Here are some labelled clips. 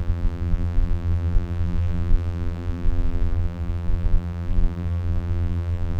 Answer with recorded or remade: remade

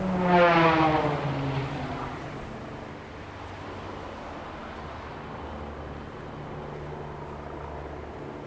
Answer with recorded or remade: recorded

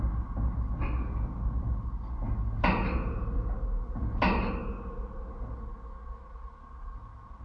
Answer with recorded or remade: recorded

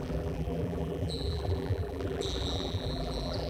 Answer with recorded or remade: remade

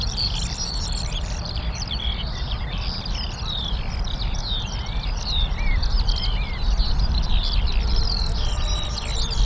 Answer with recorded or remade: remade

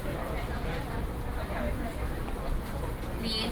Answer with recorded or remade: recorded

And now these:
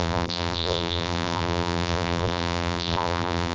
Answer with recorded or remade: remade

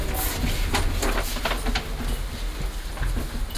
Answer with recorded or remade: recorded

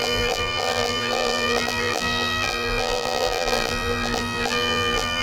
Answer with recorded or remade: remade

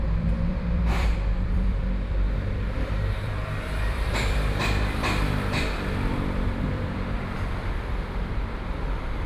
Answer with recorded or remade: remade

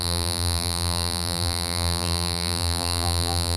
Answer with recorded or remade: remade